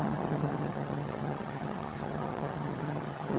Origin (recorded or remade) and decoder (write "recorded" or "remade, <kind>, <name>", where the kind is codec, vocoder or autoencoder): remade, vocoder, HiFi-GAN